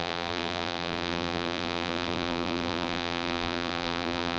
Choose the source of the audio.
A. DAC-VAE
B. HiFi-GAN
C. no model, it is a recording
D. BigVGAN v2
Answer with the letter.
D